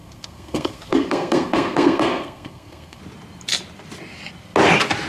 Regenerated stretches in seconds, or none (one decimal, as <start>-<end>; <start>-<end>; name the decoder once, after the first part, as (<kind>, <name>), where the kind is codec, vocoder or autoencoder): 0.0-3.0 (codec, SNAC)